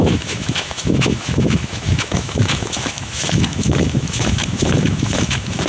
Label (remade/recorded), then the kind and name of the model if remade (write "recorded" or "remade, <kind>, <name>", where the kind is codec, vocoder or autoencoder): remade, autoencoder, DAC-VAE